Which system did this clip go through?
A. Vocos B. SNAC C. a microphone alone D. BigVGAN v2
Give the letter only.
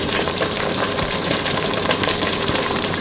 D